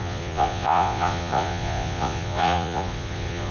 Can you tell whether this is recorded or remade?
remade